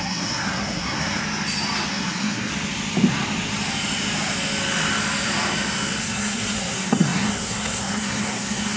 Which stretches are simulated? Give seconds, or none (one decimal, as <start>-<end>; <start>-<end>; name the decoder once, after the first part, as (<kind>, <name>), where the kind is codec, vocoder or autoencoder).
0.0-1.2 (codec, SNAC); 1.9-2.5; 6.0-8.8